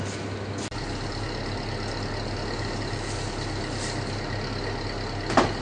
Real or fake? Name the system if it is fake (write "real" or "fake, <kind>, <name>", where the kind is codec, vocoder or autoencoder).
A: real